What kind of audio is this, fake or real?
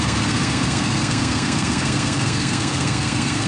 fake